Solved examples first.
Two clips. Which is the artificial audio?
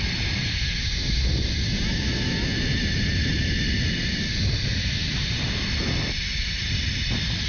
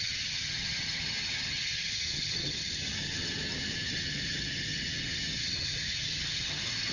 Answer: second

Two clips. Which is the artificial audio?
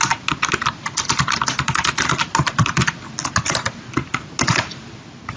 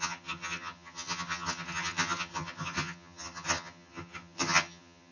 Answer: second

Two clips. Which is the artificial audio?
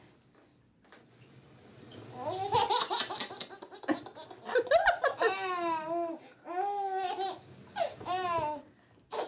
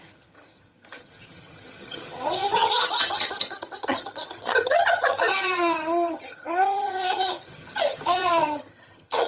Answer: second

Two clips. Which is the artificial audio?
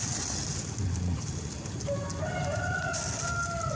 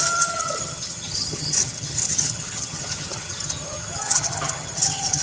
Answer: second